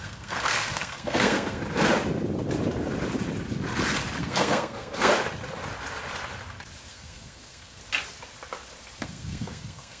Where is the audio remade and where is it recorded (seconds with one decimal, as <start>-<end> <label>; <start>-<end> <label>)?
0.0-1.6 remade; 1.6-4.2 recorded; 4.2-5.1 remade; 5.1-6.9 recorded; 6.9-7.8 remade; 7.8-9.0 recorded; 9.0-10.0 remade